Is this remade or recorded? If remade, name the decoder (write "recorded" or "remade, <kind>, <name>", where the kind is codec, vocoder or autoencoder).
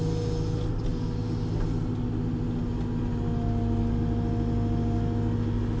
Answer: recorded